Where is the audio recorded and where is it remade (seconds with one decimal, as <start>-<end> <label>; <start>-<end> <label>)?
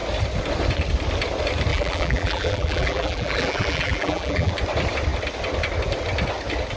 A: 0.0-1.7 recorded; 1.7-4.5 remade; 4.5-6.8 recorded